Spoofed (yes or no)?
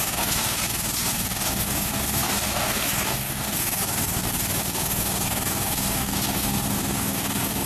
yes